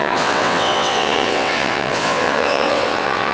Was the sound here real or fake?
fake